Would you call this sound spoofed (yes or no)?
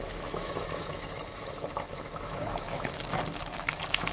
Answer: yes